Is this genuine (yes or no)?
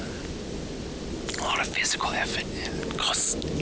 yes